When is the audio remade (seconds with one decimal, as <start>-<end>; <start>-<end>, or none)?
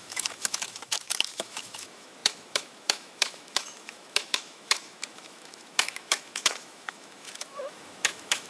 0.0-8.5